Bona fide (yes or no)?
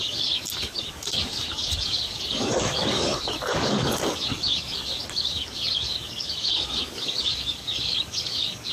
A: no